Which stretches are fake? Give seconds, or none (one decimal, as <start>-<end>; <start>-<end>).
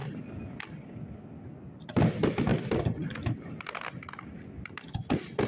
none